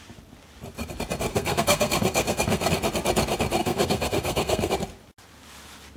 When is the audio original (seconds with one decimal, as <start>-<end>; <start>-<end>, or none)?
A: 0.0-1.3; 2.7-3.6; 4.7-6.0

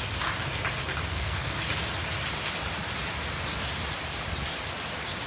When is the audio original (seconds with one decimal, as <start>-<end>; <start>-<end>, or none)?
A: 0.0-1.1; 1.6-5.3

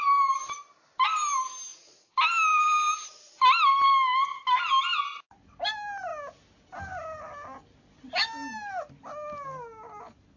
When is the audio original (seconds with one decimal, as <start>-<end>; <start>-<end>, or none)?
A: 0.0-10.4

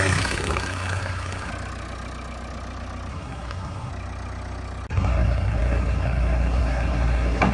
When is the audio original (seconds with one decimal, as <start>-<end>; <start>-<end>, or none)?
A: 1.5-3.1; 3.9-4.9

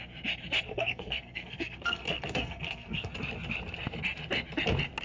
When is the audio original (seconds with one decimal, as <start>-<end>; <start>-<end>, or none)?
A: 0.0-0.7; 3.1-5.0